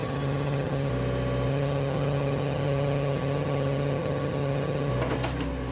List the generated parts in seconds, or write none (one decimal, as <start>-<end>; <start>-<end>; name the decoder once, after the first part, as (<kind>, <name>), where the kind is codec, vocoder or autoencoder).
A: 0.0-0.9 (vocoder, HiFi-GAN); 1.5-4.9